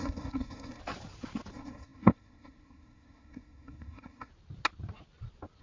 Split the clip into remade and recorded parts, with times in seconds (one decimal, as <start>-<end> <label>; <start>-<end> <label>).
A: 0.0-0.8 remade; 0.8-1.5 recorded; 1.5-4.3 remade; 4.3-5.6 recorded